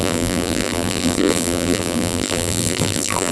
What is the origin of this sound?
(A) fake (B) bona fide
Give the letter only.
A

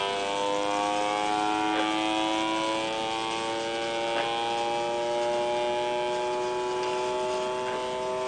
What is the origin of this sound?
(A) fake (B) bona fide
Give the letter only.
B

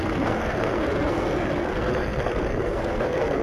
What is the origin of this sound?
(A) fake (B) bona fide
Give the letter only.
A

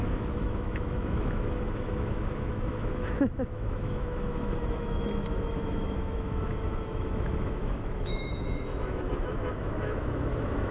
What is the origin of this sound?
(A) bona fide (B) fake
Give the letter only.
B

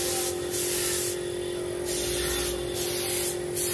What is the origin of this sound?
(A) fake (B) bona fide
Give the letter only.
B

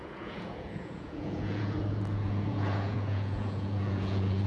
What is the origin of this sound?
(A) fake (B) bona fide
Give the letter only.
A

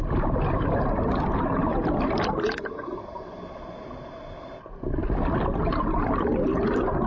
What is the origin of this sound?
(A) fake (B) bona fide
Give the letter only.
B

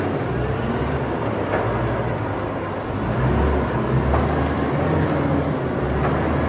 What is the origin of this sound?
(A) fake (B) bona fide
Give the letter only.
B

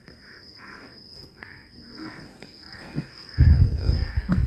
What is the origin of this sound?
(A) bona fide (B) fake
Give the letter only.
B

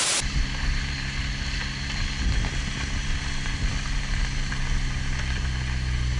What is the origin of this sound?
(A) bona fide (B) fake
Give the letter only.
A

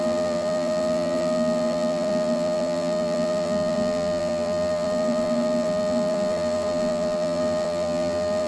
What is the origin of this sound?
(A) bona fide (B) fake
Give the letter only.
B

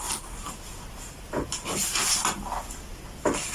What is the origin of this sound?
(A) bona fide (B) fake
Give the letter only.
A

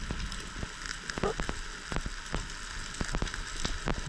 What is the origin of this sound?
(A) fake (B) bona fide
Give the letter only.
B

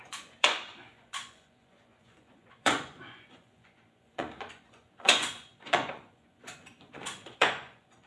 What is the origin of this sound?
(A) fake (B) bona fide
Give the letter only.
A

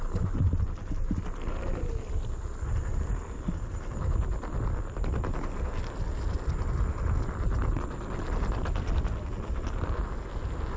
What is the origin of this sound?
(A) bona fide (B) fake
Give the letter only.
A